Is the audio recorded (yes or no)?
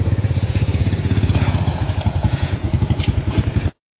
no